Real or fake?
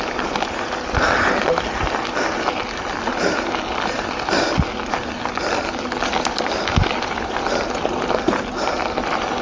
real